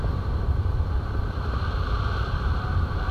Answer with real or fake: fake